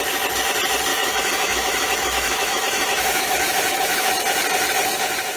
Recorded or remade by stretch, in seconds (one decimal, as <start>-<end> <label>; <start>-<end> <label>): 0.0-0.9 recorded; 0.9-4.1 remade; 4.1-5.4 recorded